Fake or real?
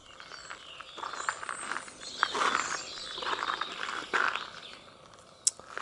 real